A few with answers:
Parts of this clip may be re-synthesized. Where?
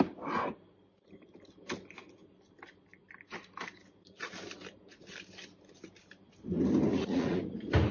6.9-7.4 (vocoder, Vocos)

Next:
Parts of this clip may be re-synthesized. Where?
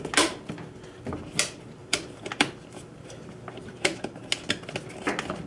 1.8-4.0 (vocoder, BigVGAN v2)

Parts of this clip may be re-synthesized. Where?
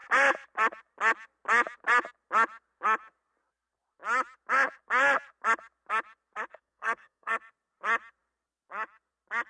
6.5-7.3 (codec, SNAC)